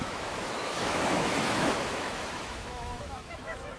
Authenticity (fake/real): fake